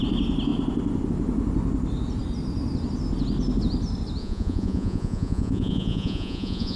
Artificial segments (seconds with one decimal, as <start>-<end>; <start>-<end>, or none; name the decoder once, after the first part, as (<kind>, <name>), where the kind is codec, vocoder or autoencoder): 4.2-6.8 (vocoder, Vocos)